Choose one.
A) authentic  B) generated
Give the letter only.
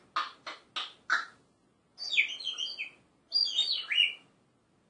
A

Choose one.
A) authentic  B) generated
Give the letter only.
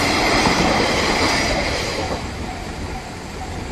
B